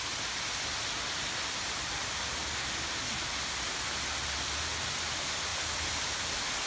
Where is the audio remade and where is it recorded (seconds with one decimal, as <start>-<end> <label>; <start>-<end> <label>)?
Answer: 0.0-6.7 recorded